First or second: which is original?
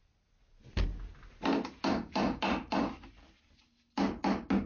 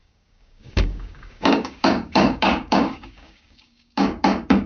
first